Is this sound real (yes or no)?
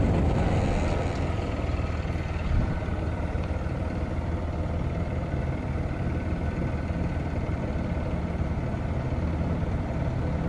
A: yes